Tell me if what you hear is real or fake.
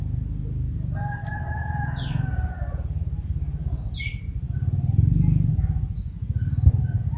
real